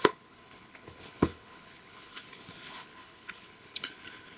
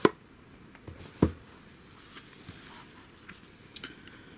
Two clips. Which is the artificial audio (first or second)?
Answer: first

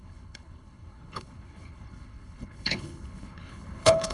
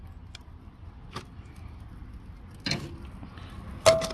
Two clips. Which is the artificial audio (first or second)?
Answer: first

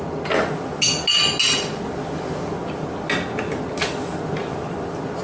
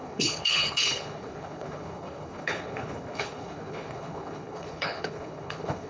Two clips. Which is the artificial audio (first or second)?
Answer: second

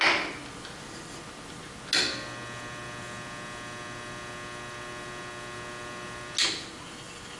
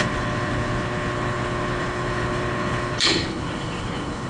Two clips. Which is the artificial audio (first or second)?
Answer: second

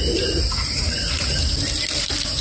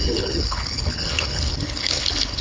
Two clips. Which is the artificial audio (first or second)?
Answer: second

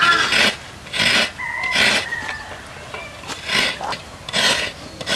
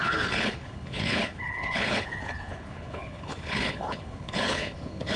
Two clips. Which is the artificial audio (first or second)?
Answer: second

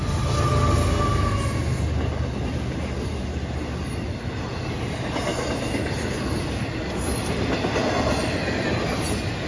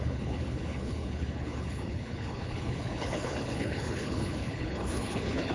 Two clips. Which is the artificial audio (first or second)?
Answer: second